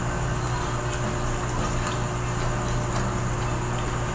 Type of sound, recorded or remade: recorded